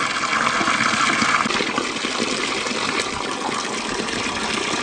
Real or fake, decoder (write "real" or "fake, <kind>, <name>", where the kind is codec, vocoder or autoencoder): real